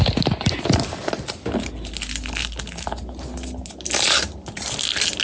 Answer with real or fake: real